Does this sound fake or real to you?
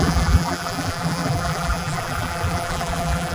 fake